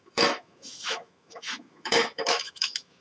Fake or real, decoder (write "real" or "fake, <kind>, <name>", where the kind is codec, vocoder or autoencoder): fake, autoencoder, DAC-VAE